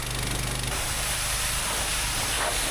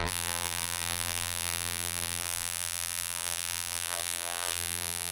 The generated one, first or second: second